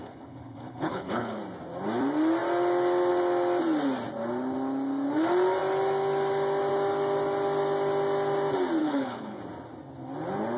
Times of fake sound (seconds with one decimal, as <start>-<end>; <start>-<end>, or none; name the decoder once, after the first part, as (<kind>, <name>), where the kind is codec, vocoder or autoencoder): 0.0-1.4 (codec, HILCodec); 8.8-9.4